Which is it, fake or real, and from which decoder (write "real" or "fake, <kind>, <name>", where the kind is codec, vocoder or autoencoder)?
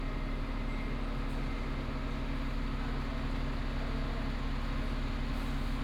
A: real